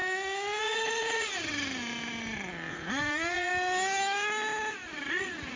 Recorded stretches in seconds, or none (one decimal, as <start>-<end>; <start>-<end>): 0.0-0.6; 1.5-2.7; 3.5-4.7